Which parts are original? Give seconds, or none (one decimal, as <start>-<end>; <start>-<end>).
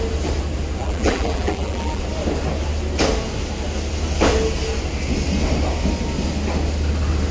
0.0-0.8; 2.0-7.3